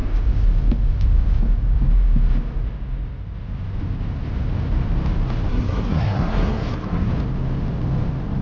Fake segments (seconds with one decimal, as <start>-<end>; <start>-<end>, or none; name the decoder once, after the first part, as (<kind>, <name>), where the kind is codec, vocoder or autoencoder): 5.5-7.1 (codec, SNAC)